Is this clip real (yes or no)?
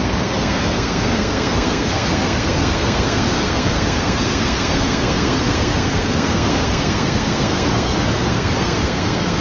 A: no